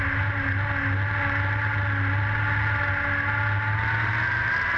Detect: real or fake real